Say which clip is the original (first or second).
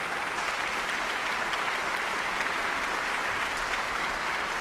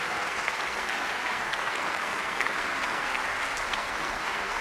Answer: first